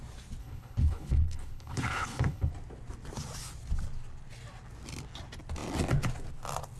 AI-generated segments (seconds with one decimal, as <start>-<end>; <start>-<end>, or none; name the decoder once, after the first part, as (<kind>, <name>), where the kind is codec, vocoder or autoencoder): 0.4-2.5 (codec, HILCodec)

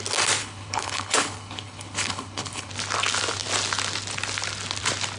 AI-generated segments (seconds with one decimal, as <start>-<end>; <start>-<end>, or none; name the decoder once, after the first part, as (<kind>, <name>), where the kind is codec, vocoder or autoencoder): 0.4-2.7 (codec, HILCodec)

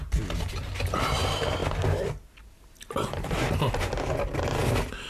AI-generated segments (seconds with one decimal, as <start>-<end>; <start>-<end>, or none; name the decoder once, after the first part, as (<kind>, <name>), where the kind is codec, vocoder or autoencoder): none

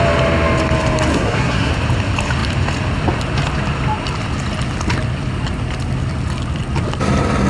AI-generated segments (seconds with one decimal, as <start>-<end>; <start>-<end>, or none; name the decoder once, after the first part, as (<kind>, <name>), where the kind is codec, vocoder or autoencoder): 1.1-1.7 (codec, SNAC)

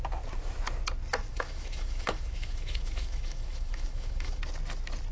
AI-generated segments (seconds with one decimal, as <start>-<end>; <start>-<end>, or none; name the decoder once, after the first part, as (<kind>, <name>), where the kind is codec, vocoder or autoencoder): 1.3-4.4 (autoencoder, DAC-VAE)

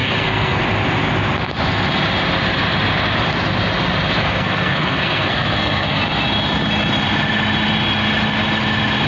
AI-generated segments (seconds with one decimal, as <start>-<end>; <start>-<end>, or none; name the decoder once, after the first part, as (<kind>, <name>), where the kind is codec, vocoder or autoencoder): 0.0-0.6 (codec, SNAC); 4.2-6.0